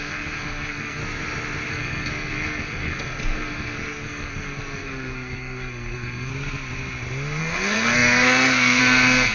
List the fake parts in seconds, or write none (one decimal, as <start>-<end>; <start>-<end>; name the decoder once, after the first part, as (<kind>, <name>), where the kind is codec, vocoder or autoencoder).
0.0-1.0 (codec, SNAC); 1.7-6.3; 7.4-9.3